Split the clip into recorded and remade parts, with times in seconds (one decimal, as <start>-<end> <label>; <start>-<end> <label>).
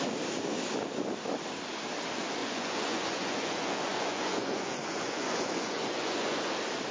0.0-2.4 recorded; 2.4-6.5 remade; 6.5-6.9 recorded